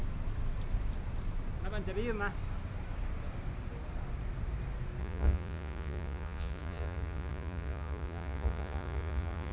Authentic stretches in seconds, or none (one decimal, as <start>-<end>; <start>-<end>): 0.0-5.0